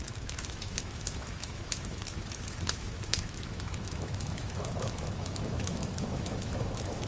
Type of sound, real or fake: fake